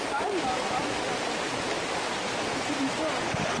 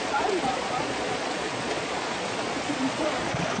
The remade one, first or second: second